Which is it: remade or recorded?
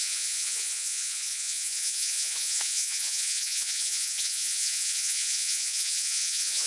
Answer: remade